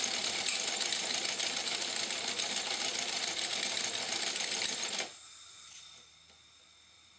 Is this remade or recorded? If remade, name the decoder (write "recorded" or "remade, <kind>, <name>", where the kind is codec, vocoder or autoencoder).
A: recorded